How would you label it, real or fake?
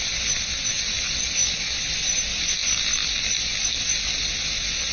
real